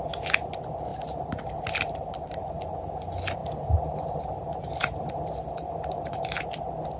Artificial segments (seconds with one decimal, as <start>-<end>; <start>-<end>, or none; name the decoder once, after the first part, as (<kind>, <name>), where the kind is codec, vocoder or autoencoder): 0.9-2.8 (vocoder, BigVGAN v2); 3.4-6.3